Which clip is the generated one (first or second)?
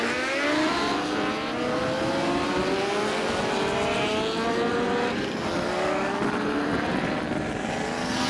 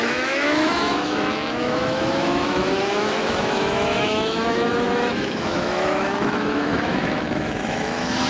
second